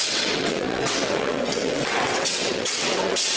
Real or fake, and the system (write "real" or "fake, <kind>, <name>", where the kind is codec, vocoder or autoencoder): fake, vocoder, WaveNeXt